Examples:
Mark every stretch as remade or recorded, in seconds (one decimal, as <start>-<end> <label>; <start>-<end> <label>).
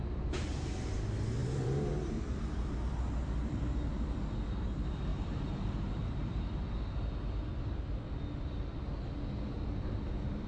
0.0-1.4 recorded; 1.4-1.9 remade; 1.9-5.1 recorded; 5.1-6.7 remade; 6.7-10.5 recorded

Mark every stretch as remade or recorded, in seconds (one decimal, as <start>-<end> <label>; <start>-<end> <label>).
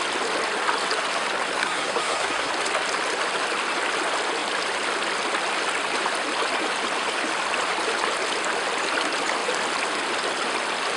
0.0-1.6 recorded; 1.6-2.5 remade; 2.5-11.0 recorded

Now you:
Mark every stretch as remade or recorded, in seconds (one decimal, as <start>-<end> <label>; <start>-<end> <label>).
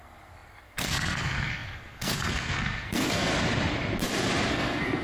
0.0-3.3 remade; 3.3-4.5 recorded; 4.5-5.0 remade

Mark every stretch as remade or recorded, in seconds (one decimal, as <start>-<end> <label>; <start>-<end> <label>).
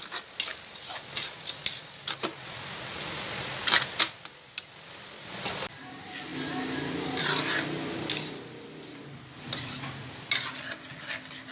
0.0-11.5 recorded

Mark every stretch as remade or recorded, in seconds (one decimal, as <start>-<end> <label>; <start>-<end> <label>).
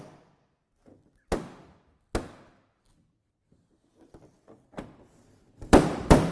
0.0-4.7 recorded; 4.7-6.3 remade